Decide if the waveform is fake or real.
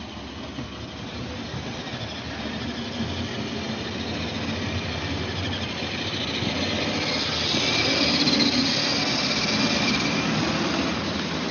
real